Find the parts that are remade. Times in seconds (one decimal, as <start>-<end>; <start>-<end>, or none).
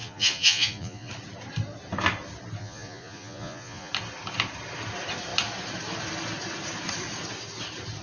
0.0-1.1; 2.6-3.9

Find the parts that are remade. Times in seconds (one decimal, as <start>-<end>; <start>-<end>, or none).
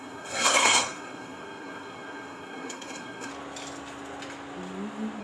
0.0-3.3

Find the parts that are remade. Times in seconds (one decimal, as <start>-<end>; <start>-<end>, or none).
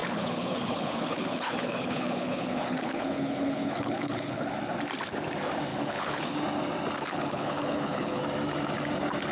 0.0-4.5; 5.7-6.4; 7.1-8.2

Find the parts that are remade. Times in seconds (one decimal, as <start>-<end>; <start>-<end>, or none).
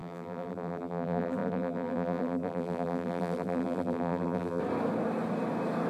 0.0-4.6